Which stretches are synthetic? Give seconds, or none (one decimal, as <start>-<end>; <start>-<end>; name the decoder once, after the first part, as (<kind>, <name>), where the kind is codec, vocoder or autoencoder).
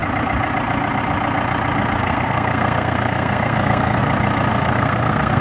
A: 2.0-4.0 (codec, SNAC); 4.5-5.4